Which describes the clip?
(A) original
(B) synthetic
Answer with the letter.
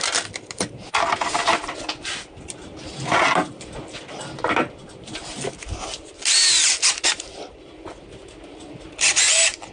A